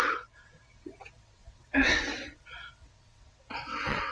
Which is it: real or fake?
fake